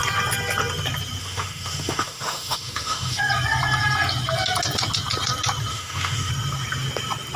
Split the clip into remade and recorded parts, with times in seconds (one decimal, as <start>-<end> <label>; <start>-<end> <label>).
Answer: 0.0-1.2 recorded; 1.2-3.2 remade; 3.2-5.7 recorded; 5.7-6.3 remade; 6.3-7.4 recorded